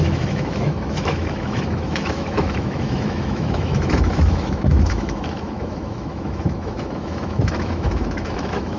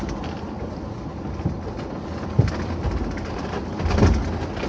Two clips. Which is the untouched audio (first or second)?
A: second